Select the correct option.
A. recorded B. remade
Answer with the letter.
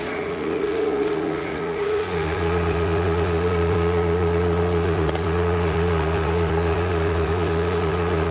B